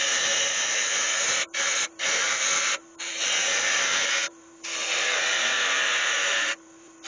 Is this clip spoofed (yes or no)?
yes